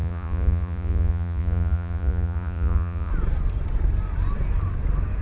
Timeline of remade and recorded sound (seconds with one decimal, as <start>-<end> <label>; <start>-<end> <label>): 0.0-3.1 remade; 3.1-5.2 recorded